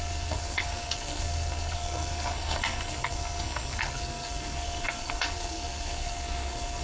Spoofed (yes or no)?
yes